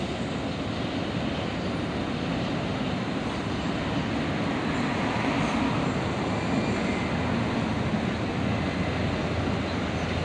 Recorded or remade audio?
recorded